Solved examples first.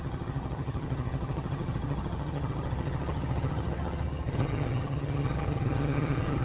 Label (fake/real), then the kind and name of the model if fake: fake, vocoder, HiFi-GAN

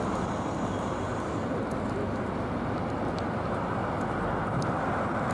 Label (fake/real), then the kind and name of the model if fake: real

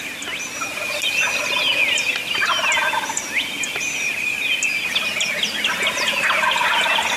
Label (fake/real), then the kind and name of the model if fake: real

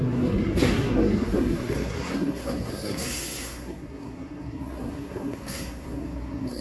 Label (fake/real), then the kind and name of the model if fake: fake, codec, SNAC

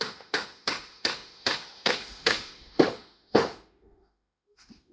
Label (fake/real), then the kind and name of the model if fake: fake, autoencoder, DAC-VAE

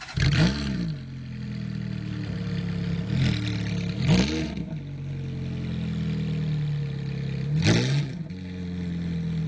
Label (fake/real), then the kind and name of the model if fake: real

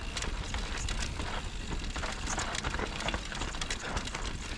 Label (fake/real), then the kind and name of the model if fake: real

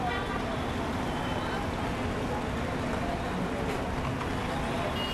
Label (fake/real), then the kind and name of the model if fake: real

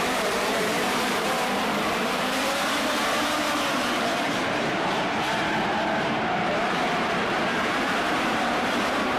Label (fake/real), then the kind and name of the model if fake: fake, vocoder, BigVGAN v2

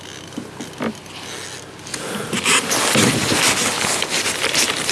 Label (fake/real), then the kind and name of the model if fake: real